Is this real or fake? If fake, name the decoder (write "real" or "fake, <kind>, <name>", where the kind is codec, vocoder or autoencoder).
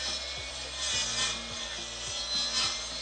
real